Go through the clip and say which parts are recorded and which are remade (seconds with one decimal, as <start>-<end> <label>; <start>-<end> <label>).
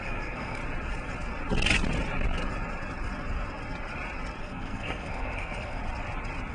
0.0-0.6 remade; 0.6-4.4 recorded; 4.4-5.8 remade; 5.8-6.5 recorded